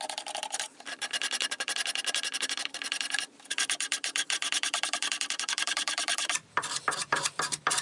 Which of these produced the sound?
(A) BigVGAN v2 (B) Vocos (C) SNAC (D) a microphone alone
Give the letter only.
A